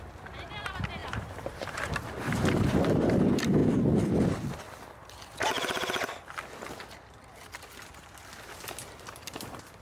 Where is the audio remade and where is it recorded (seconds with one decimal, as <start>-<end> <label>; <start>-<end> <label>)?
0.0-1.0 recorded; 1.0-2.1 remade; 2.1-9.8 recorded